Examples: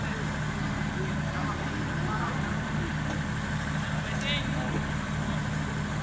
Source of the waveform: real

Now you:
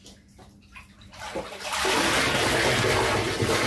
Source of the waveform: real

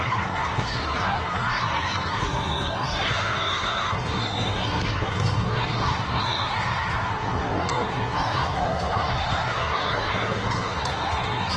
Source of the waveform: fake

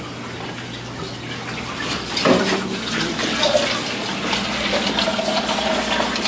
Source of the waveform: real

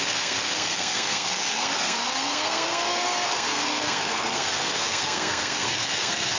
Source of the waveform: fake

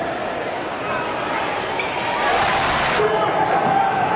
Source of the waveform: real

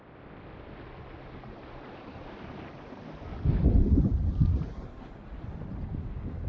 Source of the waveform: real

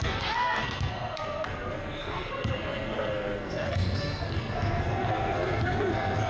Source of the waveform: fake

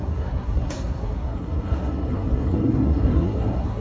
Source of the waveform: fake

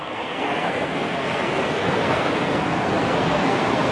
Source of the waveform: fake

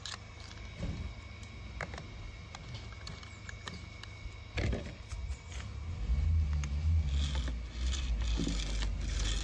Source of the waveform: real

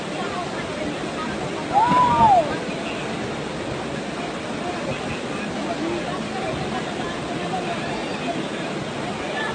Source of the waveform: real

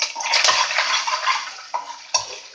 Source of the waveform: real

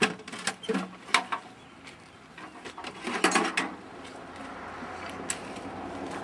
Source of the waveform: real